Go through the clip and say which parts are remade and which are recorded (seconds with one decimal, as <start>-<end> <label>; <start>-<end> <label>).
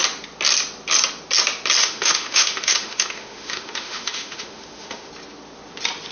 0.0-1.8 recorded; 1.8-5.1 remade; 5.1-6.1 recorded